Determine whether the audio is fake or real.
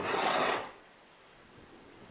fake